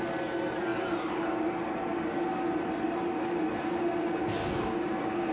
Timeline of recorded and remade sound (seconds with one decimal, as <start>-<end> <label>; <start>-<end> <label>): 0.0-4.4 recorded; 4.4-5.3 remade